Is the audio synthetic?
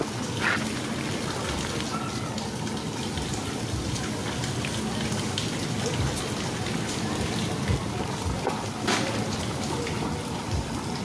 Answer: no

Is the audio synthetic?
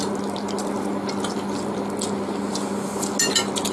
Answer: no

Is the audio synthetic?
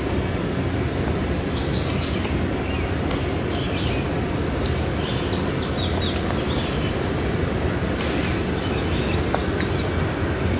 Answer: no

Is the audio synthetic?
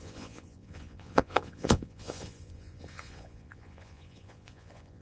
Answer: yes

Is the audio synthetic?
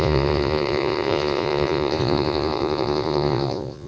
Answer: yes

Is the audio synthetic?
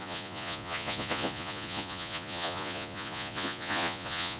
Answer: yes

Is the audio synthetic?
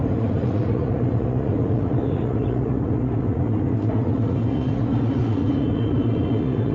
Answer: yes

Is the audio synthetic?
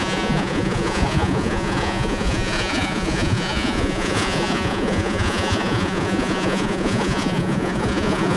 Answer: yes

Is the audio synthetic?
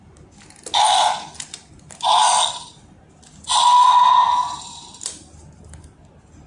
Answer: no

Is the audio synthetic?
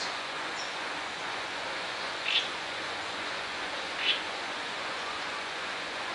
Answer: yes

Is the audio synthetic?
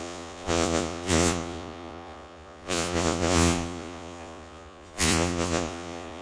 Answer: yes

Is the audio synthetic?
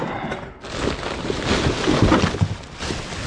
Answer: no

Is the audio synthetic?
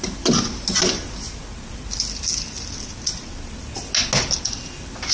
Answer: no